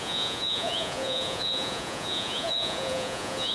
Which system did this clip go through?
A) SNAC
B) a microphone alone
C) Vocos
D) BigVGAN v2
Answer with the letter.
C